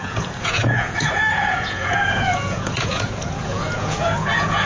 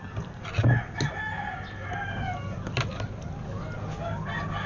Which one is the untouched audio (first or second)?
second